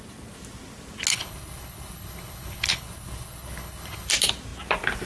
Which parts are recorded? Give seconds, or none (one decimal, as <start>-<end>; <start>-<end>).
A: 0.0-1.1; 4.1-5.1